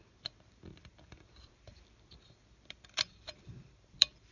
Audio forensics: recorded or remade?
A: remade